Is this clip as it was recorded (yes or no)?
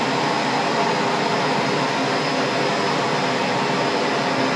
yes